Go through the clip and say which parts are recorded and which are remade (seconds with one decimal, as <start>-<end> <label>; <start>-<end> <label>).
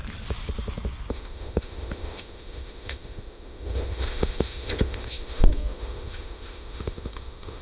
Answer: 0.0-1.1 recorded; 1.1-7.6 remade